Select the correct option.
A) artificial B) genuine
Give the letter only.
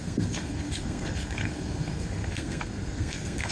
A